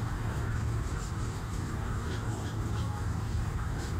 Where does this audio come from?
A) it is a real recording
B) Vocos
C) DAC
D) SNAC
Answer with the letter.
C